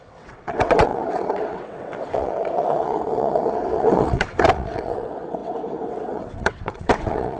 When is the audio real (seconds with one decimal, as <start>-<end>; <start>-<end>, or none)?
none